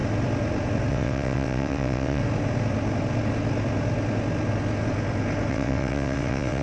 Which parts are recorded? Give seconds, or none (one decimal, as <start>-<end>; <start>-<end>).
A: 0.0-0.9; 2.2-5.5